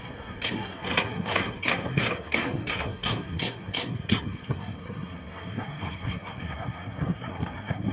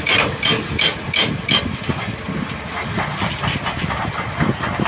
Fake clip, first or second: first